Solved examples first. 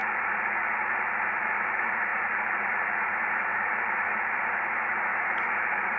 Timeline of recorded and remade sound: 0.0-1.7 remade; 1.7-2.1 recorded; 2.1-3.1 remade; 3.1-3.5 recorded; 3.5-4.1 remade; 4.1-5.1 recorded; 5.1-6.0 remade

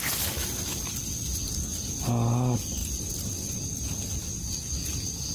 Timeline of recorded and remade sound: 0.0-2.8 recorded; 2.8-4.2 remade; 4.2-5.3 recorded